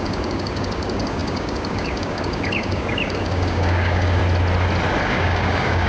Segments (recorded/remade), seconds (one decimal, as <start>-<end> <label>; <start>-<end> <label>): 0.0-4.2 remade; 4.2-5.0 recorded; 5.0-5.9 remade